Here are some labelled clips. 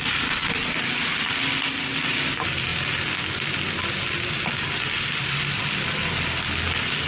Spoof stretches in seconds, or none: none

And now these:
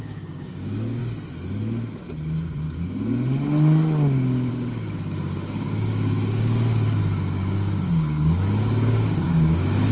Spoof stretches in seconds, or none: 0.0-1.0 (codec, DAC); 4.5-9.9